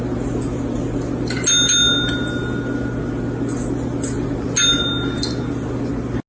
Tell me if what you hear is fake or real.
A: real